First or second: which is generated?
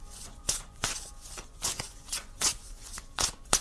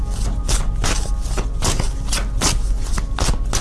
first